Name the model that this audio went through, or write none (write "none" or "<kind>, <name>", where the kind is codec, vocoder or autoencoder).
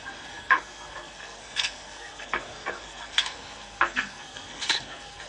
codec, SNAC